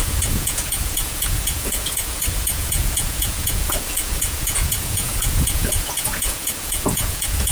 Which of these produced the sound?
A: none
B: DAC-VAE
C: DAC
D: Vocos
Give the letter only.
D